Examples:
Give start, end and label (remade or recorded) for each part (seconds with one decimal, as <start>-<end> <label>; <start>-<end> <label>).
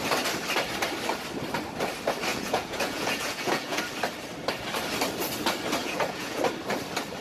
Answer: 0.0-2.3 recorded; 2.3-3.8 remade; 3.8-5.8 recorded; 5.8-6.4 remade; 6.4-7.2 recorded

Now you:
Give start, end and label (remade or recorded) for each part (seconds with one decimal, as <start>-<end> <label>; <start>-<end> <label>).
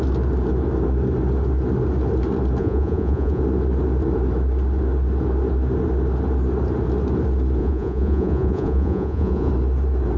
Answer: 0.0-2.6 recorded; 2.6-3.4 remade; 3.4-7.6 recorded; 7.6-9.5 remade; 9.5-10.2 recorded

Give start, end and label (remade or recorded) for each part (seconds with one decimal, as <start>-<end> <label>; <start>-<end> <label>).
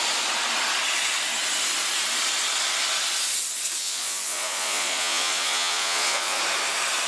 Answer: 0.0-3.8 recorded; 3.8-6.4 remade; 6.4-7.1 recorded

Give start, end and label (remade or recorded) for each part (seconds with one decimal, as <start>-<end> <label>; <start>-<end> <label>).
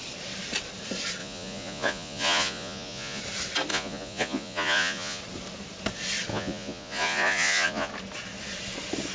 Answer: 0.0-1.2 recorded; 1.2-3.2 remade; 3.2-3.7 recorded; 3.7-5.2 remade; 5.2-6.3 recorded; 6.3-7.9 remade; 7.9-9.1 recorded